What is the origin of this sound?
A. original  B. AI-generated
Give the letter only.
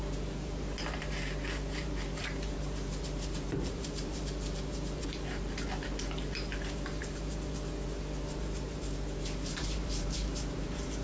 B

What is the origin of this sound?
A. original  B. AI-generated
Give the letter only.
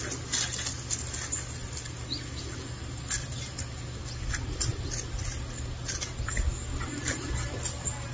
A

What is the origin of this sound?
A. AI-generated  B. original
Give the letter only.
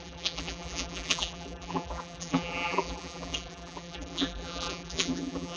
A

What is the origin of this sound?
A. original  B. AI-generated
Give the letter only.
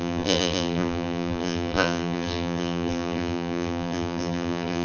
B